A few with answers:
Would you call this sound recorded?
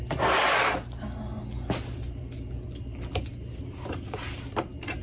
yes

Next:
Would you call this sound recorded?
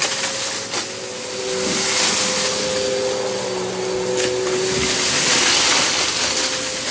yes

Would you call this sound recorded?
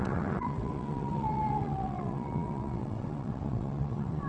no